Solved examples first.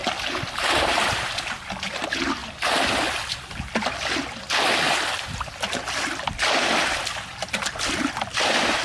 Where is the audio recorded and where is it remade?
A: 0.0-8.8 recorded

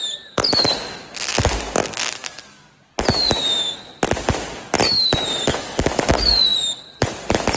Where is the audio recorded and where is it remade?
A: 0.0-5.5 recorded; 5.5-6.0 remade; 6.0-7.6 recorded